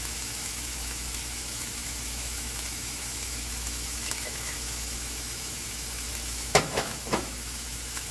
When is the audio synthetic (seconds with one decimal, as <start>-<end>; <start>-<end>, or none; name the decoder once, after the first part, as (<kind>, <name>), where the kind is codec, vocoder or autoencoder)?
0.0-8.1 (autoencoder, DAC-VAE)

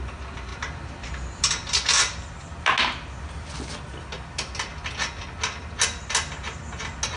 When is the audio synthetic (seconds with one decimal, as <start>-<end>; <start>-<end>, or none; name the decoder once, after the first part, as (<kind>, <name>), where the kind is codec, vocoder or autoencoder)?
none